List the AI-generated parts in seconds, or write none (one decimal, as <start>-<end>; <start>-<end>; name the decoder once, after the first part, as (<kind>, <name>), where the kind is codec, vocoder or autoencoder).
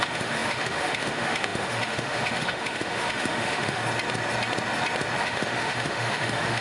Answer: 0.0-3.8 (autoencoder, DAC-VAE); 5.2-6.6